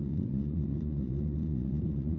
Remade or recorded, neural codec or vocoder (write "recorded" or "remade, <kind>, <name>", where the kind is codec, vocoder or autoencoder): remade, vocoder, Vocos